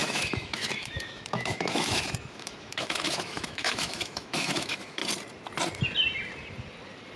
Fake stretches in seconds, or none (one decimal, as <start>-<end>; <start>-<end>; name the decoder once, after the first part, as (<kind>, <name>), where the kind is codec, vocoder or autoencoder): 0.0-5.0 (autoencoder, DAC-VAE)